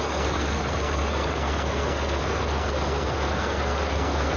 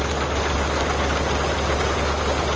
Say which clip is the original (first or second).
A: second